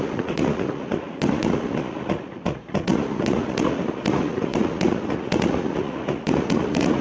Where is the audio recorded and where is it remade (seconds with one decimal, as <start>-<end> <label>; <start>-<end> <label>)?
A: 0.0-7.0 remade

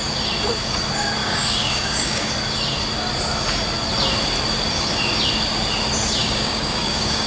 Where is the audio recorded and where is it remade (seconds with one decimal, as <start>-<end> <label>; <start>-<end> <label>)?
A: 0.0-1.2 recorded; 1.2-2.3 remade; 2.3-6.2 recorded; 6.2-7.3 remade

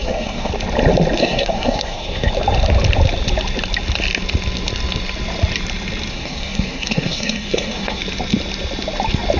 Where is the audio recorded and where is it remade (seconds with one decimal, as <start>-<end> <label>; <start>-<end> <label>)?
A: 0.0-0.5 remade; 0.5-1.2 recorded; 1.2-2.3 remade; 2.3-6.1 recorded; 6.1-8.0 remade; 8.0-9.4 recorded

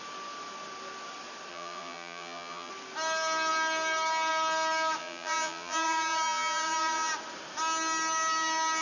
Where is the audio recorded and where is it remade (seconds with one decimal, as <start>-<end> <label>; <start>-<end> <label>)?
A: 0.0-1.5 recorded; 1.5-2.7 remade; 2.7-5.0 recorded; 5.0-7.1 remade; 7.1-8.8 recorded

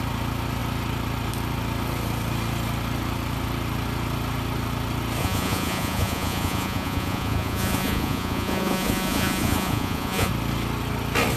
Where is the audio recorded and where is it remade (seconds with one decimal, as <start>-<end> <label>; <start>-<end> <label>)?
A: 0.0-5.2 recorded; 5.2-10.3 remade; 10.3-11.4 recorded

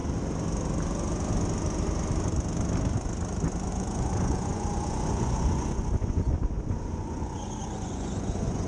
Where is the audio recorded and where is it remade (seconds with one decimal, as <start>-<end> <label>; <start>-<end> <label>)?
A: 0.0-3.7 recorded; 3.7-8.7 remade

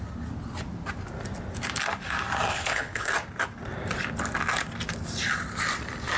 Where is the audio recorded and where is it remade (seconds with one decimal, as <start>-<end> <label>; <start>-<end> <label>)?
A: 0.0-2.5 recorded; 2.5-3.1 remade; 3.1-6.2 recorded

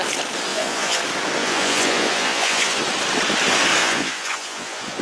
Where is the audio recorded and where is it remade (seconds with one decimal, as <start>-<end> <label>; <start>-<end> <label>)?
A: 0.0-0.5 recorded; 0.5-1.0 remade; 1.0-1.4 recorded; 1.4-2.8 remade; 2.8-3.8 recorded; 3.8-5.0 remade